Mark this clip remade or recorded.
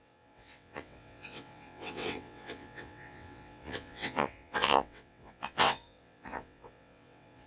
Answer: remade